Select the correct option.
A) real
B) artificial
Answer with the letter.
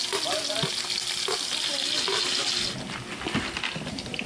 A